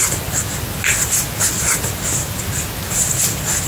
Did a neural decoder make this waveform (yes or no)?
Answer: no